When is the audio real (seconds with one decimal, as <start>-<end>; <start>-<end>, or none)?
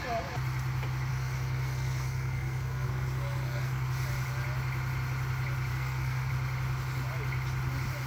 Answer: 0.0-1.1; 3.9-5.7; 6.3-8.1